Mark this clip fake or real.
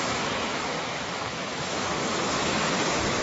fake